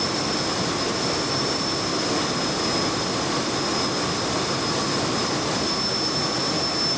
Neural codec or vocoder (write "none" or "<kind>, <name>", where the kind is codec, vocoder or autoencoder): none